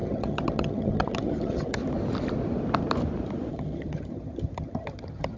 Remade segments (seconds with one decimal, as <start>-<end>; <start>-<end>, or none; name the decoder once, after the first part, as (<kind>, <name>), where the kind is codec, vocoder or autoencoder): 0.0-1.8 (vocoder, HiFi-GAN); 3.5-5.4